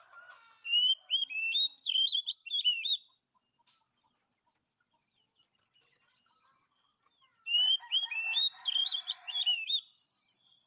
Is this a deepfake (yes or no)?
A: yes